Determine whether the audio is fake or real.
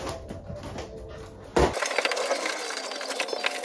real